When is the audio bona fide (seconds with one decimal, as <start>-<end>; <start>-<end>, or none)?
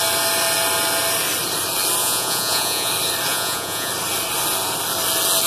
0.0-2.0; 2.9-3.3; 3.9-5.5